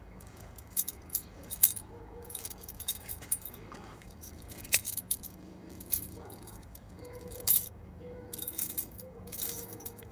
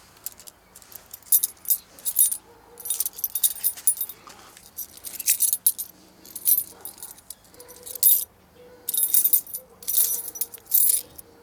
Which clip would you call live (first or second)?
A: second